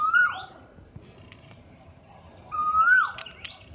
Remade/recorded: remade